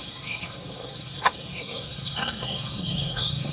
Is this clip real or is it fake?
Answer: fake